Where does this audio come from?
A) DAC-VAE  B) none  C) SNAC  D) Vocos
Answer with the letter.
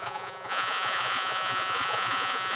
D